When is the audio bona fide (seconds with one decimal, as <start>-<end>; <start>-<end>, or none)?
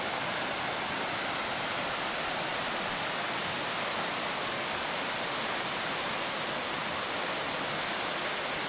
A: 0.0-8.7